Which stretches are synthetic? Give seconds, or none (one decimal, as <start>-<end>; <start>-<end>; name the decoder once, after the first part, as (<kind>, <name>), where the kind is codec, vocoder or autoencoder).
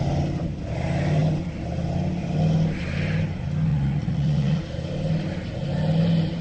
3.7-4.6 (vocoder, Vocos)